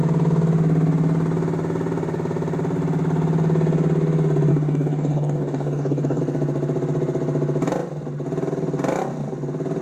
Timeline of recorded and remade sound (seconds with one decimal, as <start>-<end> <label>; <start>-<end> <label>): 0.0-4.5 recorded; 4.5-6.2 remade; 6.2-9.8 recorded